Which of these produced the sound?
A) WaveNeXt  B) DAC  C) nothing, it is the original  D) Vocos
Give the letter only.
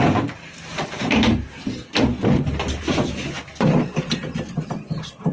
C